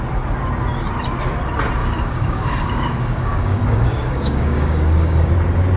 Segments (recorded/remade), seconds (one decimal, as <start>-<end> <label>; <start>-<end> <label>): 0.0-1.8 recorded; 1.8-5.3 remade; 5.3-5.8 recorded